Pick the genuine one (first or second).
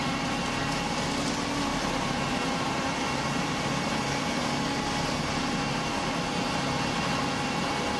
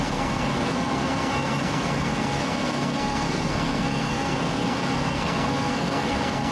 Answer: first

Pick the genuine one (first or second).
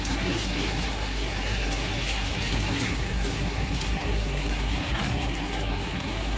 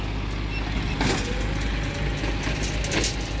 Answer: second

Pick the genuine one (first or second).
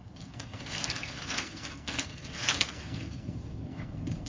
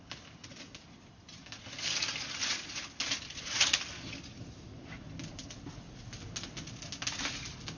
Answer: second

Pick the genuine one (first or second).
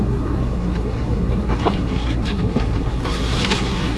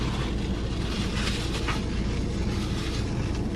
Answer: second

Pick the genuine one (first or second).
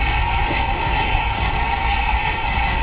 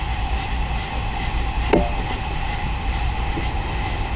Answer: second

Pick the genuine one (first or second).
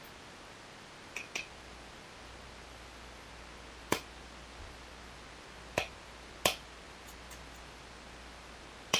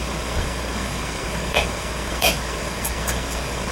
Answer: first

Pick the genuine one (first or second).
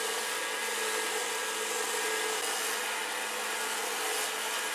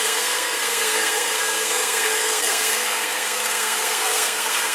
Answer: first